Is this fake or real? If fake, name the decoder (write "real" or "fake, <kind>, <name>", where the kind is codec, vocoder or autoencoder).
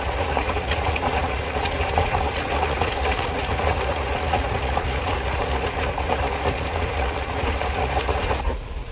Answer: fake, vocoder, Vocos